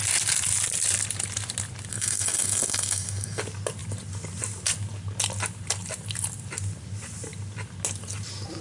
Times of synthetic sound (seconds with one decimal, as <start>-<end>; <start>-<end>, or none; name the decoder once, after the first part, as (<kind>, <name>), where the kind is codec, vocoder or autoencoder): 1.9-3.4 (codec, SNAC)